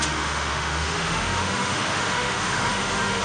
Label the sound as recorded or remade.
remade